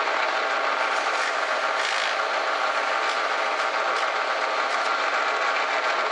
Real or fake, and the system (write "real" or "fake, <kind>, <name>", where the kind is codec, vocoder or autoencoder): real